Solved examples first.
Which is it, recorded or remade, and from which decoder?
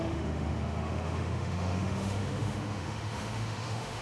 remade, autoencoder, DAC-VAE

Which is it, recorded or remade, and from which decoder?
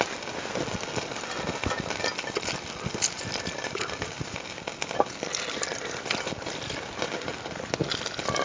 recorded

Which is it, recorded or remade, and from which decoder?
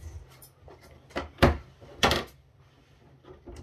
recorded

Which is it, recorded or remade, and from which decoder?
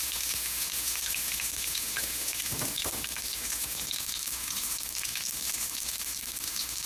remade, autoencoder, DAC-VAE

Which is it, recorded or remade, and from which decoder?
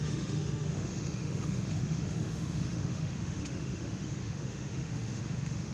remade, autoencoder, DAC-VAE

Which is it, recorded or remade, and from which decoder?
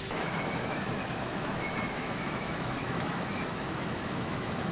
remade, autoencoder, DAC-VAE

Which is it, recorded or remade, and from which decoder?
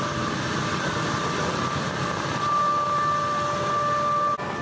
recorded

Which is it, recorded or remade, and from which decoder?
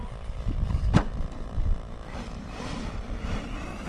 recorded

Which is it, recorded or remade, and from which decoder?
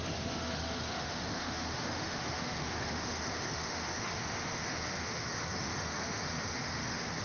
remade, autoencoder, DAC-VAE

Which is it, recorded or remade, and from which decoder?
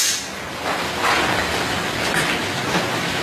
recorded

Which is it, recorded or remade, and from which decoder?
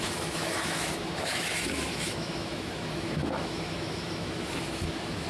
remade, autoencoder, DAC-VAE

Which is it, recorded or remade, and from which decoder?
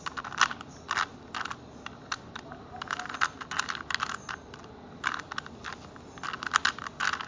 recorded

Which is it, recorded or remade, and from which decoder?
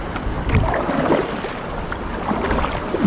recorded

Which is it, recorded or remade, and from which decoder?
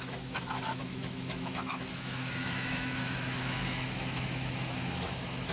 remade, autoencoder, DAC-VAE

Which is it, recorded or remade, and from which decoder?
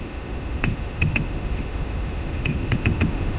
remade, autoencoder, DAC-VAE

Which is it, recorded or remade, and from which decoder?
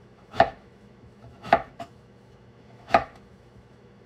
remade, autoencoder, DAC-VAE